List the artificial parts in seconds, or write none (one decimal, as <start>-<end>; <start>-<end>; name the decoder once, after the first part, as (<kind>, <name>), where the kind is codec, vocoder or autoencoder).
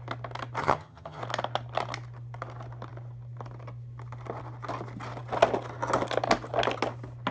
0.6-1.2 (vocoder, HiFi-GAN)